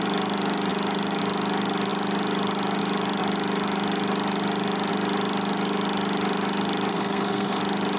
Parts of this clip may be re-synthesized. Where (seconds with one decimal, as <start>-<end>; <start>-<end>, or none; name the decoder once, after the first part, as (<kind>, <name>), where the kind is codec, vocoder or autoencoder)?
6.9-7.6 (codec, SNAC)